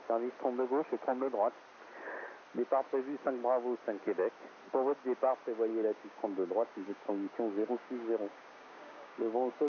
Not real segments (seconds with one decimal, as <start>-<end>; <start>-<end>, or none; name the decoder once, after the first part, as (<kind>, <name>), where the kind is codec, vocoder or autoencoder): 5.7-9.7 (codec, DAC)